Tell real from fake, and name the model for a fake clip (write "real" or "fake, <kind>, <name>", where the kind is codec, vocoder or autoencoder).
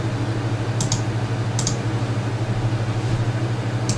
real